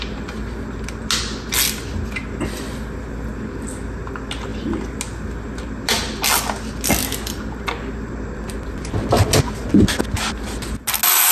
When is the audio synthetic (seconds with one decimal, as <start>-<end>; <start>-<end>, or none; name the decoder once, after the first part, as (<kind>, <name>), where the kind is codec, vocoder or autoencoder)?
none